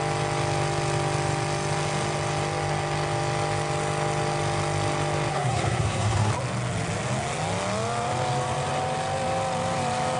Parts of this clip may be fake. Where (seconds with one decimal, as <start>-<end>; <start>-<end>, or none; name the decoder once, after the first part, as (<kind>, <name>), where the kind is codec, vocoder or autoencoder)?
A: 5.3-6.3 (codec, SNAC)